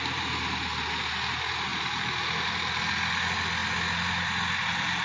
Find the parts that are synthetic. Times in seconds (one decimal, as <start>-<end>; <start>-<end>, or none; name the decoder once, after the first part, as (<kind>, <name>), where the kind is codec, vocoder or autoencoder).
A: none